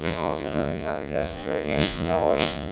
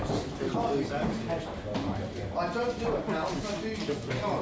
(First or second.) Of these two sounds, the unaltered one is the second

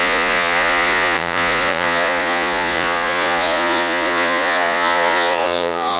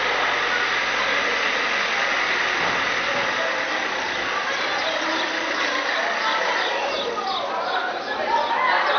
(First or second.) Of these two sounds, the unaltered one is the second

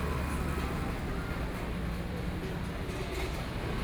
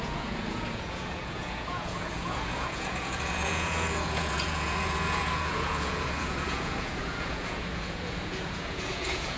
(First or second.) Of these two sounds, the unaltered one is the first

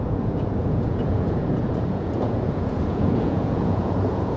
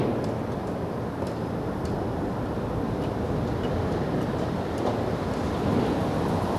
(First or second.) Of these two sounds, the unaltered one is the second